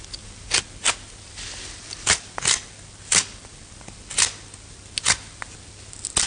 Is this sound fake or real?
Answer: real